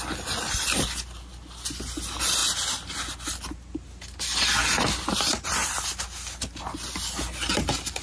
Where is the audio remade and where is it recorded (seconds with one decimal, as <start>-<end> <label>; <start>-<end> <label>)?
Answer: 0.0-8.0 recorded